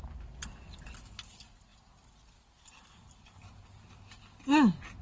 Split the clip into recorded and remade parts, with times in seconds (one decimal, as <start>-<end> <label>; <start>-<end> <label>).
0.0-5.0 recorded